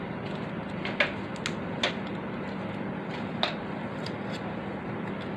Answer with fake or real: real